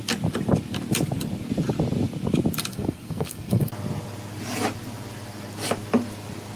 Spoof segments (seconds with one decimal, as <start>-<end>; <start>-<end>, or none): 2.7-3.7

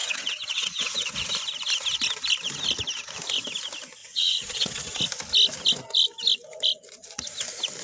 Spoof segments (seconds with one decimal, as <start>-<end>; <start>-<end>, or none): 0.0-1.3; 4.0-5.0